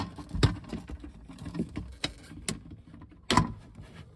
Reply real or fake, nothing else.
real